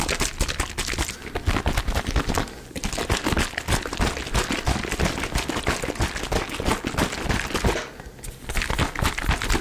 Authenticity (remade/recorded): recorded